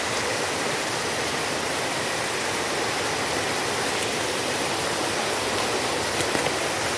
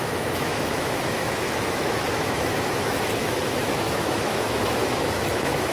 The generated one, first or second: second